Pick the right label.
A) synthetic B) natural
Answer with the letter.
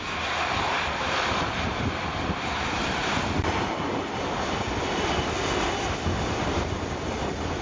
B